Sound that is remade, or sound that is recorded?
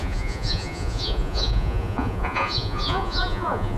remade